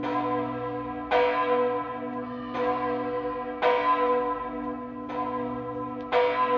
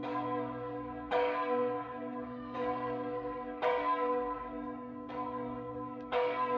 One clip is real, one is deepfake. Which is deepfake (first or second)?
second